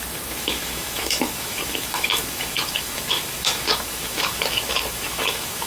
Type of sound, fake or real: fake